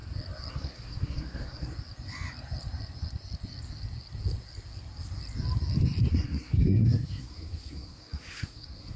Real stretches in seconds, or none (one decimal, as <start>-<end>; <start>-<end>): 0.0-0.5; 1.7-6.1